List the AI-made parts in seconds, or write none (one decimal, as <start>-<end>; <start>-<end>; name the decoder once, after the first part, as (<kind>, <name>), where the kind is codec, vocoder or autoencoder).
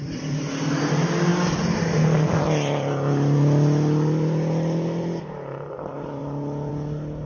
none